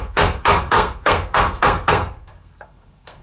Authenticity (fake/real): fake